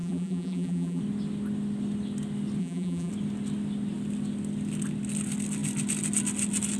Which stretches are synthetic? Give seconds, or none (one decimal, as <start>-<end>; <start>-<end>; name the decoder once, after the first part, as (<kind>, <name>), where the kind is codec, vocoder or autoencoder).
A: 0.0-1.0 (vocoder, BigVGAN v2); 2.6-3.1